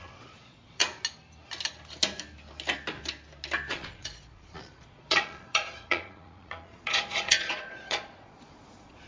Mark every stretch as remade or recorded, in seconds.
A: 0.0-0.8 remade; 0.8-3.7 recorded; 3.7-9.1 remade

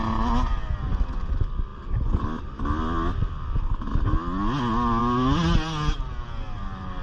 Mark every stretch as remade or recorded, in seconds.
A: 0.0-7.0 recorded

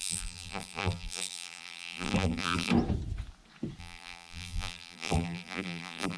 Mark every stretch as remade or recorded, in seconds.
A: 0.0-2.7 remade; 2.7-3.8 recorded; 3.8-6.2 remade

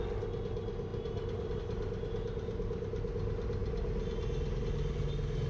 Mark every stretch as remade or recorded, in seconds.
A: 0.0-5.5 recorded

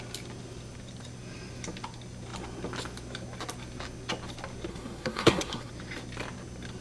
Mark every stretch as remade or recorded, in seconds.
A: 0.0-4.7 recorded; 4.7-5.7 remade; 5.7-6.8 recorded

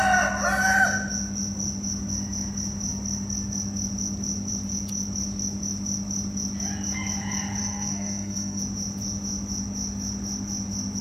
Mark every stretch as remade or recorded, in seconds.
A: 0.0-7.6 recorded; 7.6-8.6 remade; 8.6-11.0 recorded

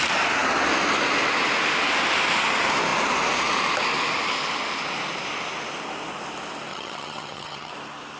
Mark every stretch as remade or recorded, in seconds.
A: 0.0-6.7 recorded; 6.7-7.7 remade; 7.7-8.2 recorded

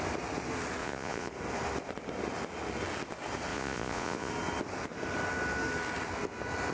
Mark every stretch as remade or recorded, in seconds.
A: 0.0-0.8 recorded; 0.8-1.3 remade; 1.3-3.5 recorded; 3.5-4.3 remade; 4.3-6.7 recorded